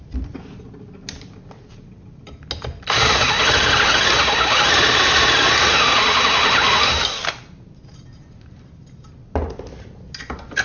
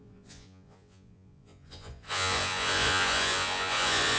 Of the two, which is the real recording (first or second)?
first